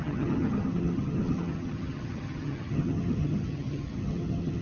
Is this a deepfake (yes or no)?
yes